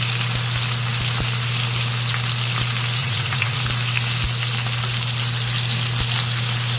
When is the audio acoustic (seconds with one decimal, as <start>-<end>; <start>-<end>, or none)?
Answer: 0.0-3.0; 3.6-6.8